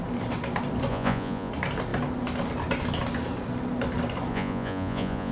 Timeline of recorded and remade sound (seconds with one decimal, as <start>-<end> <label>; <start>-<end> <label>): 0.0-0.9 recorded; 0.9-1.5 remade; 1.5-4.3 recorded; 4.3-5.3 remade